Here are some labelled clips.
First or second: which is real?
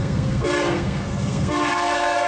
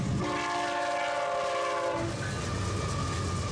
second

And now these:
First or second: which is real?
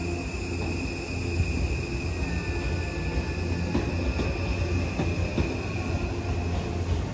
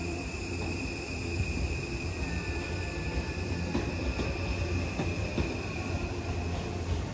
first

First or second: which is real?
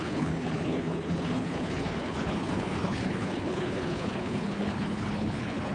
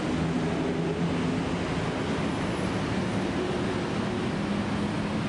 second